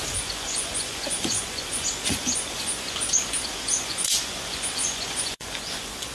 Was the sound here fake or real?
fake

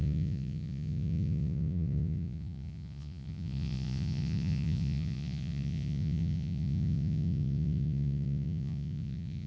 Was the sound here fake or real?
fake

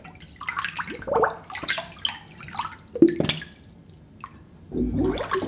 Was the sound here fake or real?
real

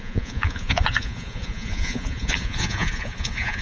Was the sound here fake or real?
fake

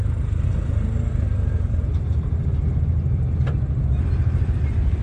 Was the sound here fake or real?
real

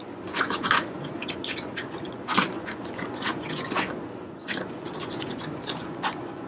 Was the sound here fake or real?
fake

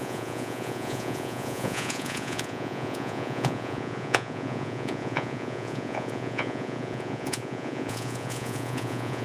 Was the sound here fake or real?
fake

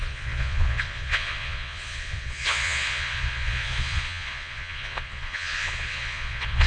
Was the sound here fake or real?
fake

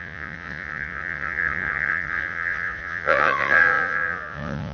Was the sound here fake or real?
fake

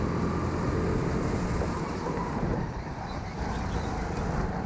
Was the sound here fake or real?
real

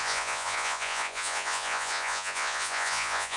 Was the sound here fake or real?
fake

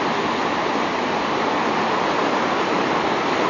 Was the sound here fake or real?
real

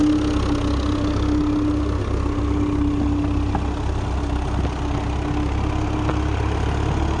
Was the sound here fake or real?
real